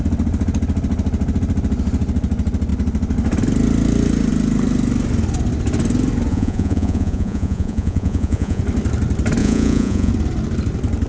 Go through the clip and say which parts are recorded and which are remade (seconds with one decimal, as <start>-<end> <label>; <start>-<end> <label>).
0.0-6.3 recorded; 6.3-8.6 remade; 8.6-9.4 recorded; 9.4-10.1 remade; 10.1-11.1 recorded